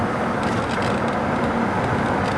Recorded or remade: recorded